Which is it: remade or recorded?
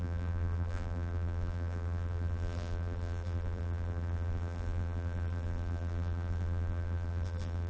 remade